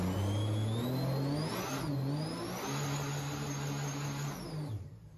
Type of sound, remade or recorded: recorded